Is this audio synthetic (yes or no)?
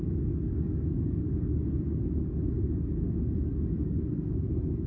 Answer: yes